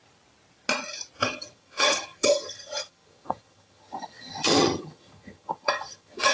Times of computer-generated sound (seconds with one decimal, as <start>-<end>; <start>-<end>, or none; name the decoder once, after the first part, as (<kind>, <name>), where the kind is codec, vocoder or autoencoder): 1.2-6.3 (vocoder, HiFi-GAN)